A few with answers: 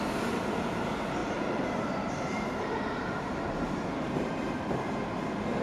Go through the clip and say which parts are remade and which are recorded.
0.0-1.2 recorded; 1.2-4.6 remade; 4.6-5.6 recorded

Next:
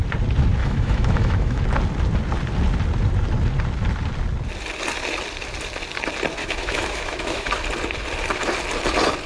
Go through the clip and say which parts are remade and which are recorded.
0.0-0.6 recorded; 0.6-1.6 remade; 1.6-6.4 recorded; 6.4-7.5 remade; 7.5-9.3 recorded

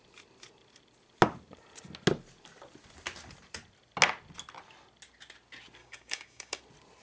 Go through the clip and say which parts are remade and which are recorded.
0.0-5.8 recorded; 5.8-6.6 remade; 6.6-7.0 recorded

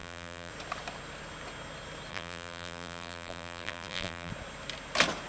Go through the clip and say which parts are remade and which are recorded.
0.0-0.5 remade; 0.5-2.1 recorded; 2.1-4.3 remade; 4.3-5.3 recorded